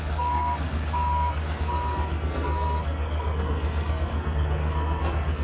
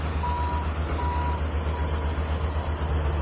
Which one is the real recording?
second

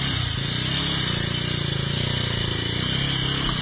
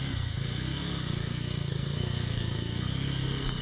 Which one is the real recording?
first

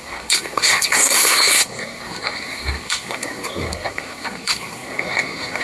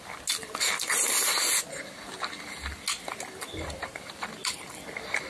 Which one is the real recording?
second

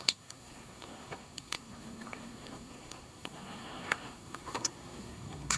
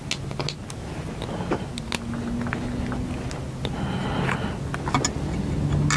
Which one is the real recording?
second